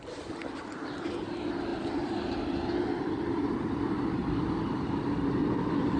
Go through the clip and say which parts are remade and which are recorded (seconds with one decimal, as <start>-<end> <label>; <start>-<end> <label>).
0.0-6.0 recorded

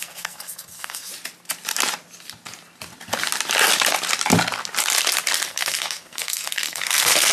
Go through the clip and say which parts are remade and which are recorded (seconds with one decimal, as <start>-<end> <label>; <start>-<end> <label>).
0.0-1.1 remade; 1.1-5.5 recorded; 5.5-7.3 remade